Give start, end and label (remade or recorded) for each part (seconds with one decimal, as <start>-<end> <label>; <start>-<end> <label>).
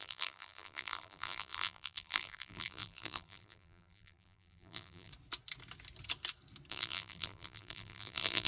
0.0-5.1 remade; 5.1-6.7 recorded; 6.7-8.5 remade